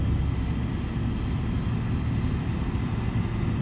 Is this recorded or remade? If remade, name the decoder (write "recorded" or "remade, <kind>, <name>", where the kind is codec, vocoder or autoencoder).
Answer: recorded